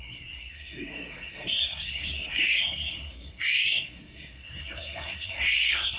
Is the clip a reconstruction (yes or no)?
yes